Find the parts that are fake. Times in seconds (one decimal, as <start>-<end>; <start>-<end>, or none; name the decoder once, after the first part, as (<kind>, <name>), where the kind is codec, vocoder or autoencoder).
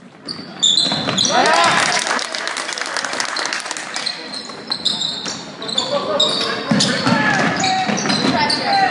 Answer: none